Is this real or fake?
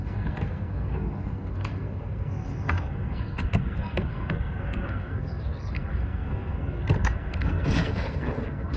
fake